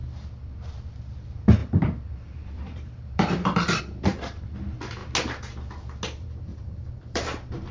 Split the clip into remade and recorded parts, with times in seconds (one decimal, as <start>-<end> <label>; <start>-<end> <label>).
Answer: 0.0-1.6 recorded; 1.6-3.8 remade; 3.8-6.5 recorded; 6.5-7.7 remade